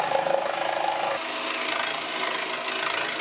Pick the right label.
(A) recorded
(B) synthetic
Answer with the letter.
A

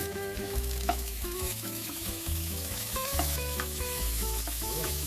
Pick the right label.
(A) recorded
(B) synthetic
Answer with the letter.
B